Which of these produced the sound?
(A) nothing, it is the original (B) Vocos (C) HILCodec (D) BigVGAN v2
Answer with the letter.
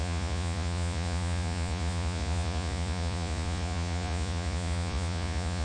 B